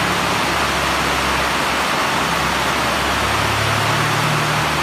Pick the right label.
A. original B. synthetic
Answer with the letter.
A